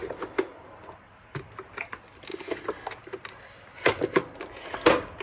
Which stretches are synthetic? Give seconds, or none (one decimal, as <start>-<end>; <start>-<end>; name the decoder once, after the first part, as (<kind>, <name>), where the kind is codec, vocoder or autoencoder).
none